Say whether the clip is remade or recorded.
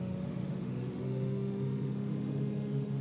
remade